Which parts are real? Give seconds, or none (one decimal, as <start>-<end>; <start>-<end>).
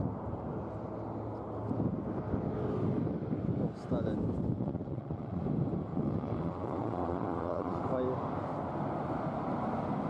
0.0-4.6; 5.4-5.9; 7.8-10.1